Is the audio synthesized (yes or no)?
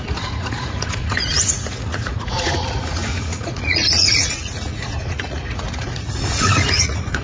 yes